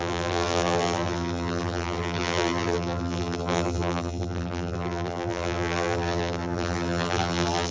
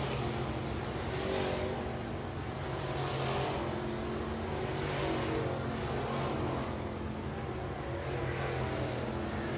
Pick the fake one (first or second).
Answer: first